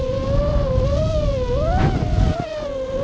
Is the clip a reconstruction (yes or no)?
no